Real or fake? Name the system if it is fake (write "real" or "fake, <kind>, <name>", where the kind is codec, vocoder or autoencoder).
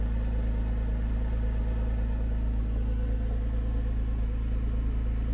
real